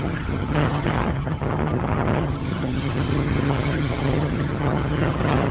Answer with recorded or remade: remade